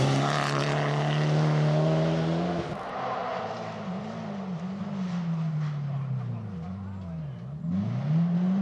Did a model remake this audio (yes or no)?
no